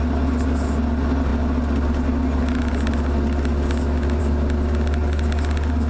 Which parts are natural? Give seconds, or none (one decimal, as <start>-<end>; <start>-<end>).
0.0-5.9